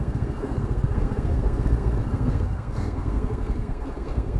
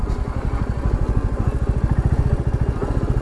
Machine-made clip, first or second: first